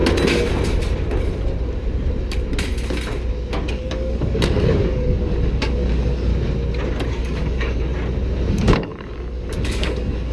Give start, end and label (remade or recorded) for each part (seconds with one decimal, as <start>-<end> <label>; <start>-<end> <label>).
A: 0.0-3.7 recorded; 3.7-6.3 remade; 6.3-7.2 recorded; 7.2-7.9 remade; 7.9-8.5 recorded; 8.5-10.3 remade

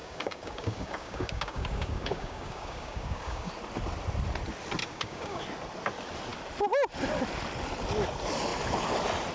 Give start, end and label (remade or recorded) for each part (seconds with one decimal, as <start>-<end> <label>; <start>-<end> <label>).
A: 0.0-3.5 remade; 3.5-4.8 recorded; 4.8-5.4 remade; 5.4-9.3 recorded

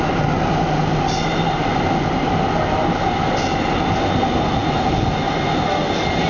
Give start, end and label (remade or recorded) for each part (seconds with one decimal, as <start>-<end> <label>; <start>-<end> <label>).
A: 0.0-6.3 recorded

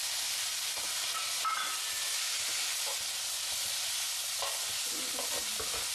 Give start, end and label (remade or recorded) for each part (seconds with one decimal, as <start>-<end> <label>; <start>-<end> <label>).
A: 0.0-5.9 recorded

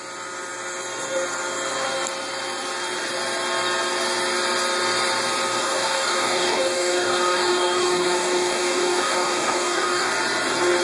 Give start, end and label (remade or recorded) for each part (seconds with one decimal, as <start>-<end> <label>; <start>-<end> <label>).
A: 0.0-5.6 recorded; 5.6-10.1 remade; 10.1-10.8 recorded